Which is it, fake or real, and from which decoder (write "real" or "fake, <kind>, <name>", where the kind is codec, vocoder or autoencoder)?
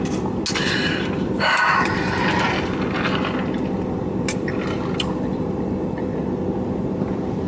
real